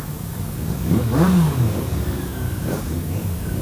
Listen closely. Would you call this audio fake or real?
fake